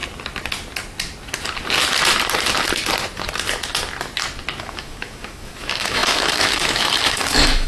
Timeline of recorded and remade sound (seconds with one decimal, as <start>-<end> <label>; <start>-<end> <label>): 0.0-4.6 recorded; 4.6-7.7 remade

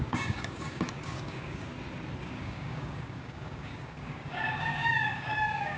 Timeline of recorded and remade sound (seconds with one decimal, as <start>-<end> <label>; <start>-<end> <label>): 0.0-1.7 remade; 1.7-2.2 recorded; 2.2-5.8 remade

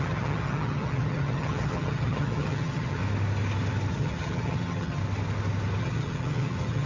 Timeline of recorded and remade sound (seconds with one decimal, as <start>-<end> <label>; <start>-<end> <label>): 0.0-3.0 remade; 3.0-3.9 recorded; 3.9-5.0 remade; 5.0-5.8 recorded; 5.8-6.9 remade

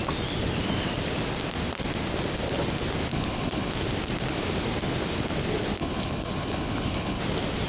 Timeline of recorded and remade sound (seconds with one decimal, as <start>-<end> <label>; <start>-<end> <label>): 0.0-3.1 recorded; 3.1-3.7 remade; 3.7-5.8 recorded; 5.8-7.2 remade; 7.2-7.7 recorded

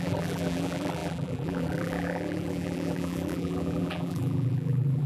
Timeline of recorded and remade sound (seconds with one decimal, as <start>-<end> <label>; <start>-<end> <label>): 0.0-5.1 remade